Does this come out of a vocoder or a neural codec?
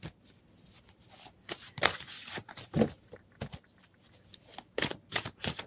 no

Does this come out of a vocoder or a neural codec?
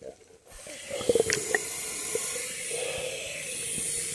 no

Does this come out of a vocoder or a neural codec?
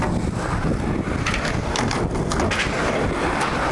no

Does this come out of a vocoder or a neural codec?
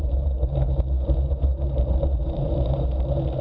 yes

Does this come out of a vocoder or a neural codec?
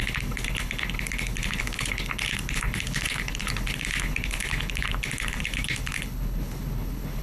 yes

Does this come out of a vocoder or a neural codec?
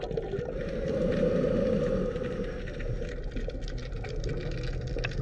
no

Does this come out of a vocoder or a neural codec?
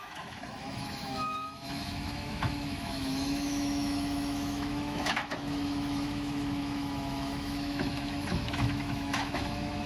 yes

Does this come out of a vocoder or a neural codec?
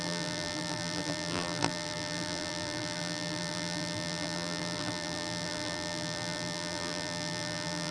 yes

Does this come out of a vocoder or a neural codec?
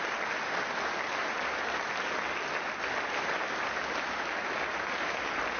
no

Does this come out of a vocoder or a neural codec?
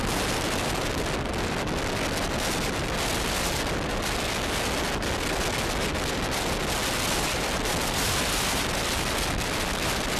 no